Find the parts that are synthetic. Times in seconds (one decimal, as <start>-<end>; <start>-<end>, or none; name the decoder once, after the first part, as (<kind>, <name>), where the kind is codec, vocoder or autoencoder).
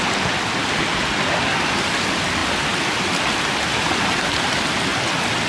none